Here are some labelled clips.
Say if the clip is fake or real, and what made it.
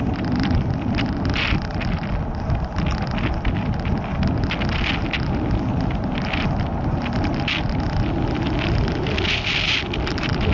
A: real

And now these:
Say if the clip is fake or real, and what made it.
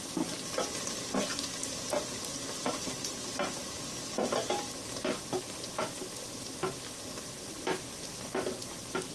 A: real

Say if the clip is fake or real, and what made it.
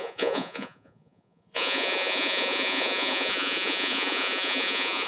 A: fake, vocoder, Vocos